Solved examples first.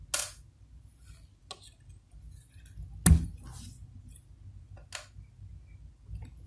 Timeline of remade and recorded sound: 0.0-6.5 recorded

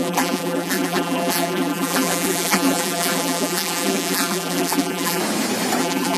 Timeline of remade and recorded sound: 0.0-5.2 remade; 5.2-5.8 recorded; 5.8-6.2 remade

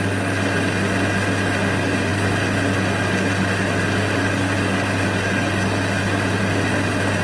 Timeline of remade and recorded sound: 0.0-7.2 recorded

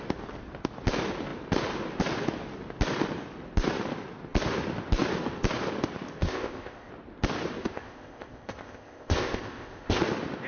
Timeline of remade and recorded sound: 0.0-6.2 recorded; 6.2-6.9 remade; 6.9-7.6 recorded; 7.6-10.0 remade; 10.0-10.5 recorded

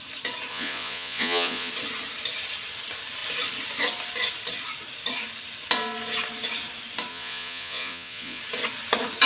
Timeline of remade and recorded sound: 0.0-0.5 recorded; 0.5-1.7 remade; 1.7-7.1 recorded; 7.1-8.4 remade; 8.4-9.3 recorded

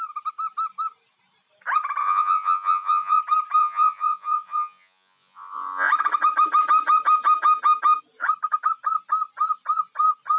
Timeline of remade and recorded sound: 0.0-2.0 recorded; 2.0-3.2 remade; 3.2-3.6 recorded; 3.6-5.9 remade; 5.9-10.4 recorded

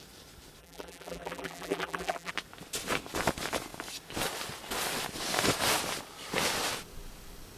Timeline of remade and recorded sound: 0.0-0.6 recorded; 0.6-2.3 remade; 2.3-7.6 recorded

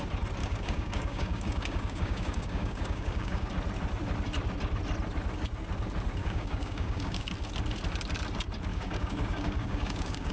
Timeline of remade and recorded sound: 0.0-0.4 recorded; 0.4-3.5 remade; 3.5-6.2 recorded; 6.2-7.3 remade; 7.3-8.7 recorded; 8.7-10.3 remade